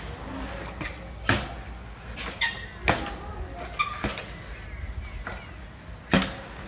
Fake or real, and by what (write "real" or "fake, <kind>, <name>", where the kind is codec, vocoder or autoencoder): real